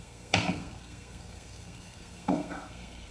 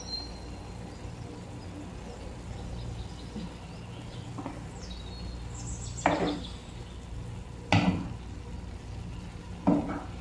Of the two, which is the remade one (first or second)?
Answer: first